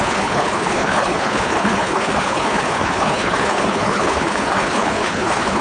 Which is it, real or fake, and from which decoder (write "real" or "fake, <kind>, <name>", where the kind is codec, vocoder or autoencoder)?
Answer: fake, codec, HILCodec